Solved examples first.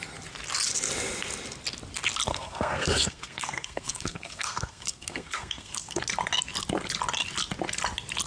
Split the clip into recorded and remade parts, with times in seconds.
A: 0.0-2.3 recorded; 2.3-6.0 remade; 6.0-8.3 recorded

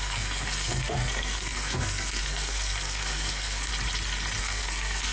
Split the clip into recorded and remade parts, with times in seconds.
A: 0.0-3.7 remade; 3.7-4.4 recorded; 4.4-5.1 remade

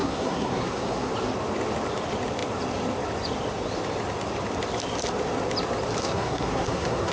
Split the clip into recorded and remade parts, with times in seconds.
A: 0.0-1.1 remade; 1.1-6.0 recorded; 6.0-7.1 remade

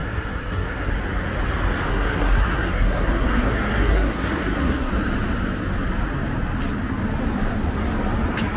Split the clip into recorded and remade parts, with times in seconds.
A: 0.0-0.9 remade; 0.9-1.9 recorded; 1.9-4.9 remade; 4.9-8.6 recorded

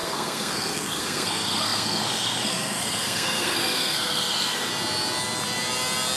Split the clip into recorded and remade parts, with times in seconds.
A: 0.0-4.7 remade; 4.7-6.2 recorded

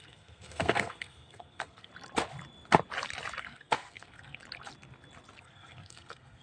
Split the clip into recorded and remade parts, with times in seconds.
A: 0.0-1.9 remade; 1.9-3.4 recorded; 3.4-4.4 remade; 4.4-5.4 recorded; 5.4-6.4 remade

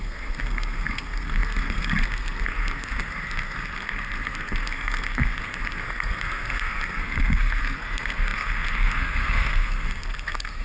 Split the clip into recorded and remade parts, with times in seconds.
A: 0.0-10.6 remade